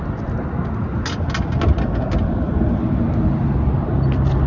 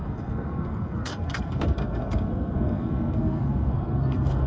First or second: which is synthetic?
second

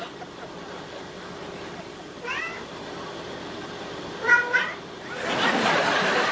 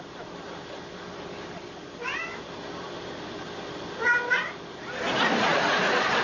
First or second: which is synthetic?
first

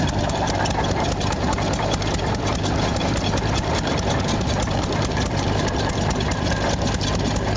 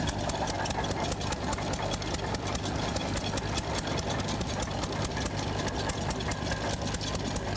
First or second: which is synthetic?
first